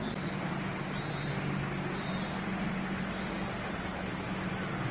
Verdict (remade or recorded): recorded